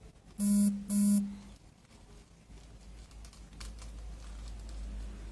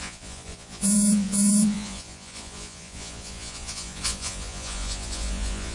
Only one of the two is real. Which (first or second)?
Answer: first